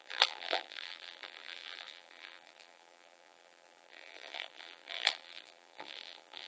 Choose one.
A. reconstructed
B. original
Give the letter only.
A